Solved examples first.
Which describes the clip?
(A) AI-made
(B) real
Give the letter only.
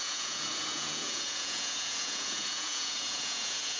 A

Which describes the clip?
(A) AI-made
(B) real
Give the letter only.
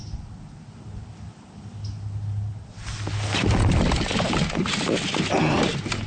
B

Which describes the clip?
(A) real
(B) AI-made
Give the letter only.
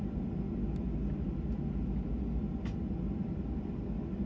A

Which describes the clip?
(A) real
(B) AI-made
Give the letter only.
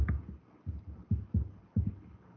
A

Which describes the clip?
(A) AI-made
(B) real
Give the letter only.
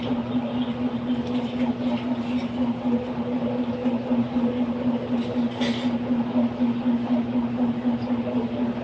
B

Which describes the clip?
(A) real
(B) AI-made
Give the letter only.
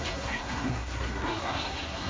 B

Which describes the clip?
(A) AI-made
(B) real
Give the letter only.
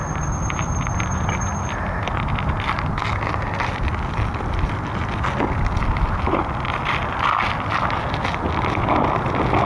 B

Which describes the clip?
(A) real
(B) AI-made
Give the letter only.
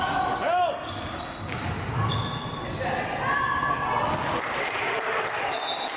A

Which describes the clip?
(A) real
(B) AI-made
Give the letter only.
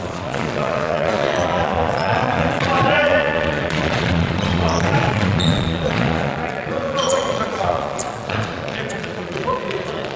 B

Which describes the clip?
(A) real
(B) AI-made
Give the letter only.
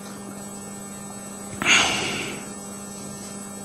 A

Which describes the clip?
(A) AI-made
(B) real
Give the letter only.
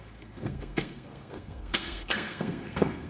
A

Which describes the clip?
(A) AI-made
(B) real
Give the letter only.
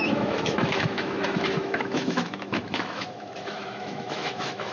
A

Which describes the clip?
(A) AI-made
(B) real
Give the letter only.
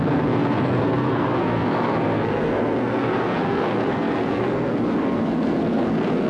A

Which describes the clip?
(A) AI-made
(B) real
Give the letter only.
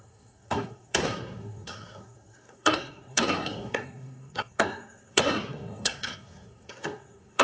A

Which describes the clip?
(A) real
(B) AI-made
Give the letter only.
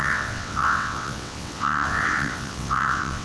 B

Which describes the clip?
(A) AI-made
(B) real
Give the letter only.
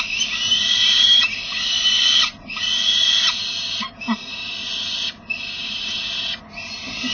B